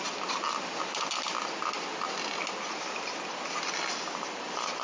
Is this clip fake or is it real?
real